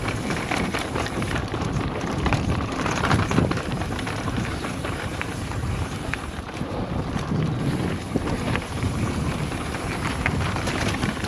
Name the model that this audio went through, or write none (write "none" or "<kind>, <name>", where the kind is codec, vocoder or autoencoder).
vocoder, BigVGAN v2